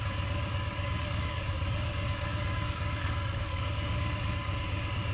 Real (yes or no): no